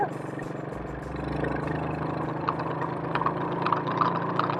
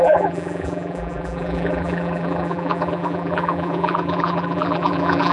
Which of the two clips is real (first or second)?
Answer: first